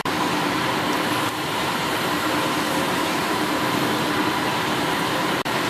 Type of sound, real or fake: fake